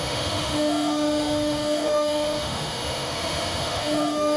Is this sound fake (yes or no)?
yes